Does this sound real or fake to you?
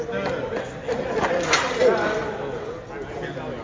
real